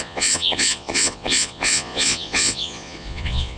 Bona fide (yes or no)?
no